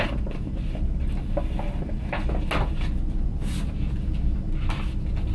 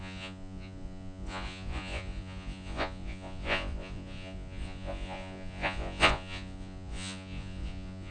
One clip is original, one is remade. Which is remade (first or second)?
second